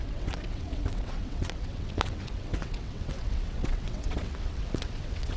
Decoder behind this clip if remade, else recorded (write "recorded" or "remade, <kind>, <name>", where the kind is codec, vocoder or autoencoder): remade, vocoder, WaveNeXt